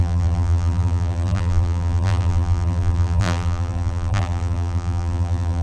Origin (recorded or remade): remade